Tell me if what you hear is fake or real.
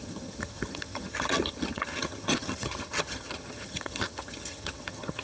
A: fake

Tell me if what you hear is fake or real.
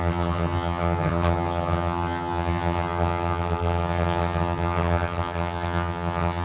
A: fake